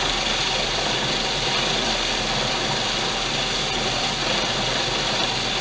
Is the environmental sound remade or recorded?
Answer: recorded